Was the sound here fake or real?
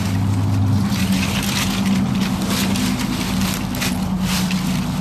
real